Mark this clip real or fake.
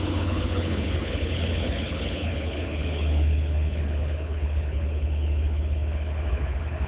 fake